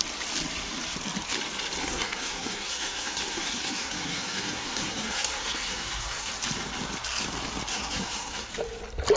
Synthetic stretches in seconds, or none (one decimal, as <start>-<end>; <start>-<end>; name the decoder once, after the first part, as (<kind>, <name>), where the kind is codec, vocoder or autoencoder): 1.8-6.3 (codec, SNAC); 7.7-8.5